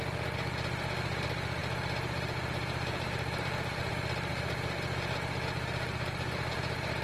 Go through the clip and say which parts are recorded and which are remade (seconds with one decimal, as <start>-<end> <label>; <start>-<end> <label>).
0.0-1.6 recorded; 1.6-3.9 remade; 3.9-4.3 recorded; 4.3-6.5 remade; 6.5-7.0 recorded